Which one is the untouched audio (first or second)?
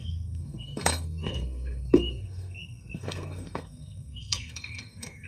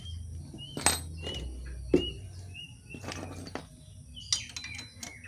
second